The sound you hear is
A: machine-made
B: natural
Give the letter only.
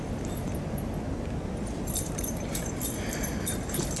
A